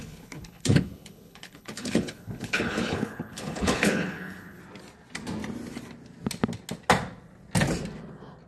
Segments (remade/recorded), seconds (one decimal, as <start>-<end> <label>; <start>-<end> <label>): 0.0-4.6 remade; 4.6-8.5 recorded